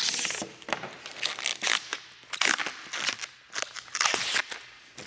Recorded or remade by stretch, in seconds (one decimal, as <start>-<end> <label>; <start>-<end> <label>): 0.0-5.1 recorded